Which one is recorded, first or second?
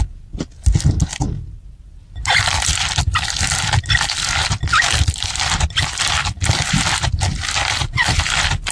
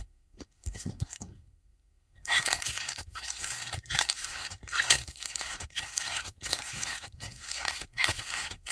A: first